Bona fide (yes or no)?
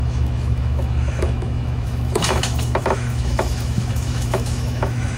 no